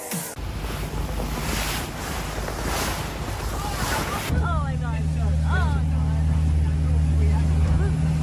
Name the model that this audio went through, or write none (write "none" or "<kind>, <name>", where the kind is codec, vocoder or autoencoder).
none